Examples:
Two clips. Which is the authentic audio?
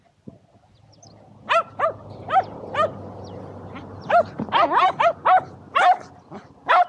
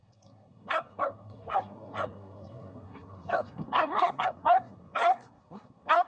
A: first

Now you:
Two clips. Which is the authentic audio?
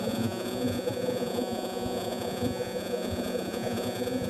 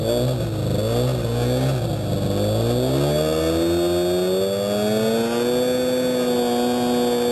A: second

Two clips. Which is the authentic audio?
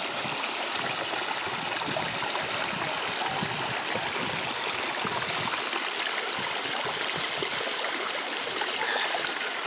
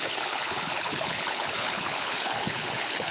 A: first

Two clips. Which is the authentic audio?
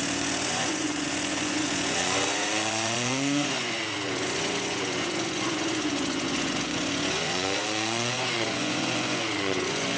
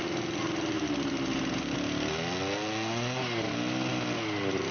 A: second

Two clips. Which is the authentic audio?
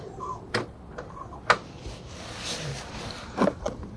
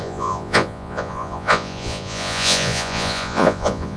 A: first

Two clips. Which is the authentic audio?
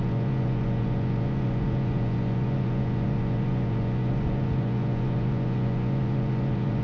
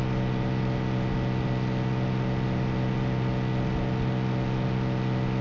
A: second